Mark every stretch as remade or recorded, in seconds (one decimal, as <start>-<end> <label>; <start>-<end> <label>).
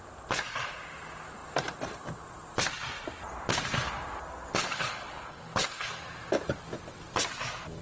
0.0-4.6 recorded; 4.6-5.9 remade; 5.9-7.8 recorded